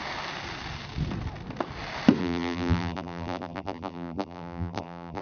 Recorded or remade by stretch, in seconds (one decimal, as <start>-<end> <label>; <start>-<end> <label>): 0.0-2.2 recorded; 2.2-5.2 remade